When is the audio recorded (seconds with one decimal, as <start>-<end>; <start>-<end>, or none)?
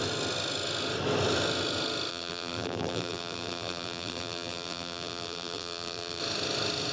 0.0-2.1; 6.2-6.9